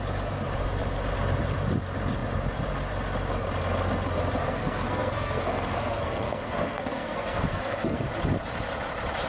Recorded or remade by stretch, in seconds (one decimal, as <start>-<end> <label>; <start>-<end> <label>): 0.0-4.4 recorded; 4.4-8.1 remade; 8.1-9.3 recorded